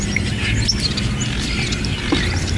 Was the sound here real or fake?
real